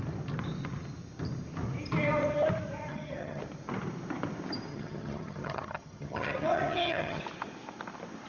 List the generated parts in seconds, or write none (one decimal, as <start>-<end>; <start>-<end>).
2.9-3.4; 4.7-7.2